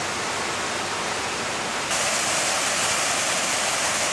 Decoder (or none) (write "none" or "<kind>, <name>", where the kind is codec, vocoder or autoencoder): none